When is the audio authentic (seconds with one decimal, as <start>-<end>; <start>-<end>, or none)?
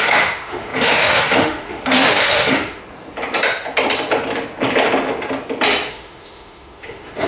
2.8-5.9